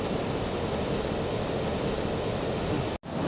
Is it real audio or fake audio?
real